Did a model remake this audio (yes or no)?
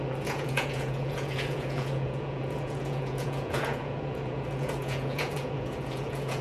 yes